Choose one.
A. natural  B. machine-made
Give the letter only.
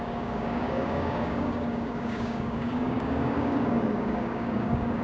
B